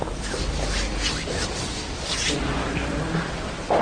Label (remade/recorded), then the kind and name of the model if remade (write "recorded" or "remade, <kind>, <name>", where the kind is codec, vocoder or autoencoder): recorded